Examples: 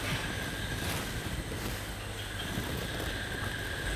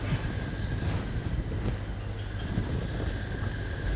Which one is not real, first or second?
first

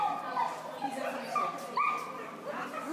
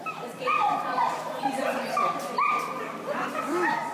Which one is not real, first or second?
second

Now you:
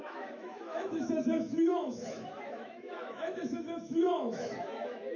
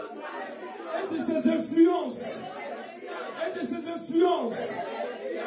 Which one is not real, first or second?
first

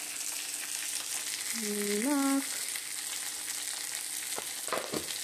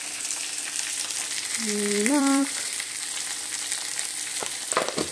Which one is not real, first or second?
second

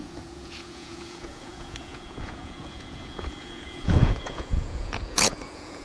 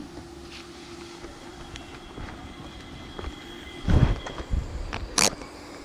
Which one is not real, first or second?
first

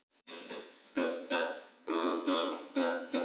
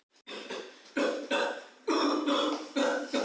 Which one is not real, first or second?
first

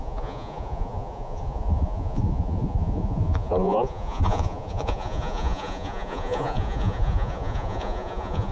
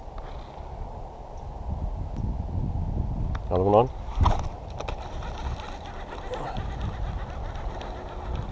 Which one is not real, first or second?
first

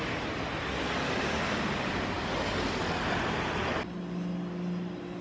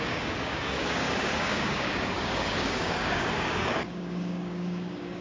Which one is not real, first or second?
second